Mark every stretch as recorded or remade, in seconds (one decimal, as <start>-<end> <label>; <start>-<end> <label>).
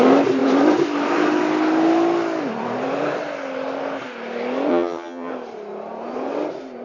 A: 0.0-4.7 recorded; 4.7-5.3 remade; 5.3-6.8 recorded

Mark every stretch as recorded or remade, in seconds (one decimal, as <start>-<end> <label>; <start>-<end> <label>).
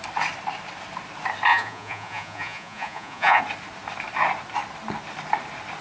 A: 0.0-1.5 recorded; 1.5-3.4 remade; 3.4-5.8 recorded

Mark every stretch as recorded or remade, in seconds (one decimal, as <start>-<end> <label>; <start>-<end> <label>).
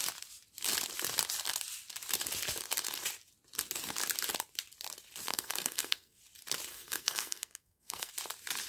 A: 0.0-5.3 recorded; 5.3-6.2 remade; 6.2-6.7 recorded; 6.7-8.1 remade; 8.1-8.7 recorded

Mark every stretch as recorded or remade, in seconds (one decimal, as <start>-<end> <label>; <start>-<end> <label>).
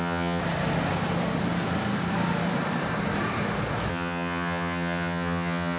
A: 0.0-0.4 remade; 0.4-3.9 recorded; 3.9-5.8 remade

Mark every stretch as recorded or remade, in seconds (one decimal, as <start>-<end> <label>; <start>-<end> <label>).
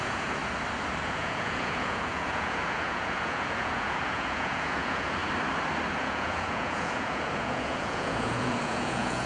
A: 0.0-0.4 remade; 0.4-1.0 recorded; 1.0-5.2 remade; 5.2-5.9 recorded; 5.9-9.3 remade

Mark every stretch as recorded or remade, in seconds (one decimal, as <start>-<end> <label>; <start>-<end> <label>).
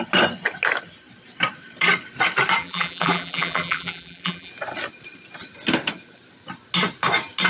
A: 0.0-2.6 recorded; 2.6-4.5 remade; 4.5-7.5 recorded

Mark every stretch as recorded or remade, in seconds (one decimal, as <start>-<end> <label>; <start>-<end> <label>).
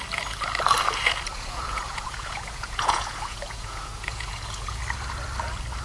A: 0.0-1.3 recorded; 1.3-4.8 remade; 4.8-5.8 recorded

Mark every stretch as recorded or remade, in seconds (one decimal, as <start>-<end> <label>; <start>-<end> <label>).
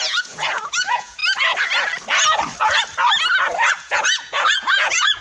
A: 0.0-1.2 remade; 1.2-3.7 recorded; 3.7-5.2 remade